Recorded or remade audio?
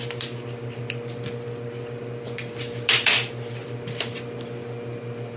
recorded